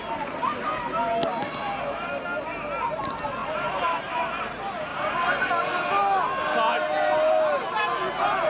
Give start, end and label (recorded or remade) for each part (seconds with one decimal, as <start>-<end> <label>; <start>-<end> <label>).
0.0-3.4 recorded; 3.4-4.4 remade; 4.4-4.9 recorded; 4.9-5.4 remade; 5.4-8.5 recorded